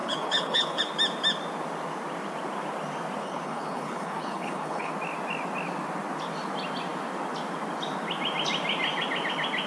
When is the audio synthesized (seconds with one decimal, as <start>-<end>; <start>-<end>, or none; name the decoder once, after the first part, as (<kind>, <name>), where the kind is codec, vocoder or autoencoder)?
0.0-0.8 (codec, HILCodec); 3.2-4.9